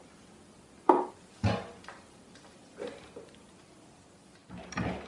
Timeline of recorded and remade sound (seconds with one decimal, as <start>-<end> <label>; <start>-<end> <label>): 0.0-5.1 recorded

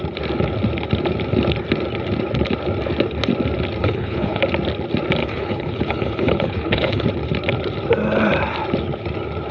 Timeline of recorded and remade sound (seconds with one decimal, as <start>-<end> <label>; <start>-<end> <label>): 0.0-3.8 recorded; 3.8-4.4 remade; 4.4-5.2 recorded; 5.2-7.1 remade; 7.1-9.5 recorded

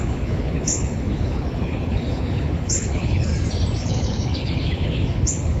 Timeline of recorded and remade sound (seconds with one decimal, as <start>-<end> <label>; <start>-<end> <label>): 0.0-3.3 remade; 3.3-3.8 recorded; 3.8-5.6 remade

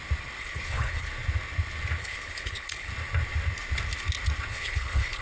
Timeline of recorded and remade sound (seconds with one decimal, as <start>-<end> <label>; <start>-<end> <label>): 0.0-0.4 recorded; 0.4-1.1 remade; 1.1-2.0 recorded; 2.0-2.9 remade; 2.9-4.5 recorded; 4.5-5.2 remade

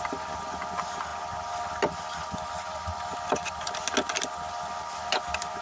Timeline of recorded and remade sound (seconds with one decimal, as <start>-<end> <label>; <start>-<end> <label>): 0.0-5.6 recorded

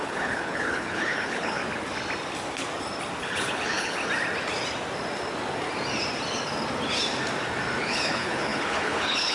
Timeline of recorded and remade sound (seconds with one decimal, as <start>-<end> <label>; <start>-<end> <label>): 0.0-1.6 remade; 1.6-3.2 recorded; 3.2-4.0 remade; 4.0-7.8 recorded; 7.8-9.3 remade

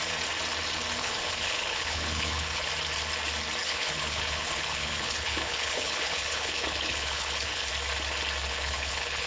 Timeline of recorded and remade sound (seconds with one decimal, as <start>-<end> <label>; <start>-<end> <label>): 0.0-1.0 recorded; 1.0-2.7 remade; 2.7-3.6 recorded; 3.6-7.7 remade; 7.7-8.5 recorded; 8.5-9.3 remade